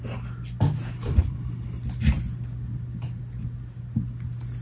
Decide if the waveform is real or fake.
real